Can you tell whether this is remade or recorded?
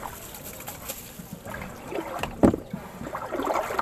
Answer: recorded